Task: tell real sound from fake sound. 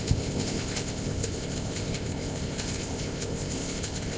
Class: fake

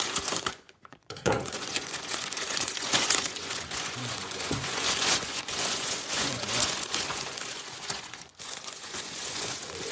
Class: fake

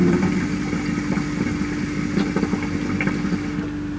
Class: real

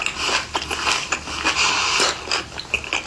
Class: real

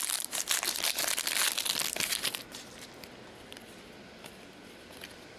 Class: real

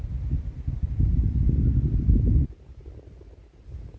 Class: real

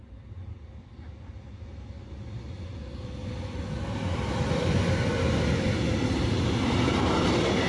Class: real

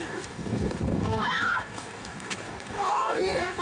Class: fake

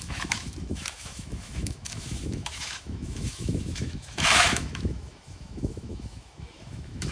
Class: fake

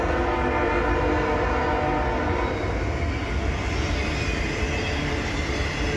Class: real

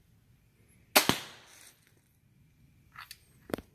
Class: real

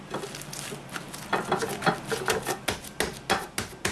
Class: real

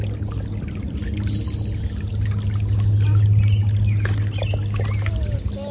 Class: real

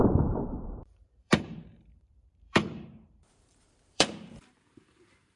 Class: fake